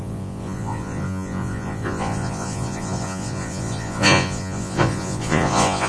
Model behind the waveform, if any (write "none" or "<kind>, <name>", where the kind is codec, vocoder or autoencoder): vocoder, Vocos